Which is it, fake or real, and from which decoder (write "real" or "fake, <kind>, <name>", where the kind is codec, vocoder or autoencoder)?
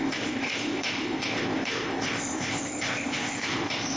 fake, codec, ZipCodec